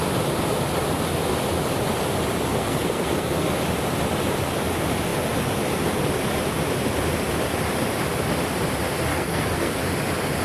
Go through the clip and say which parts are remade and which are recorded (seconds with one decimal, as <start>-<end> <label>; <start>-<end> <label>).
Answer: 0.0-2.5 recorded; 2.5-3.6 remade; 3.6-9.1 recorded; 9.1-9.8 remade; 9.8-10.4 recorded